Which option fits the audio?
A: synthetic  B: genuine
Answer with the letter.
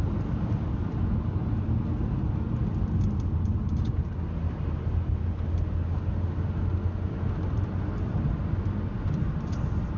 B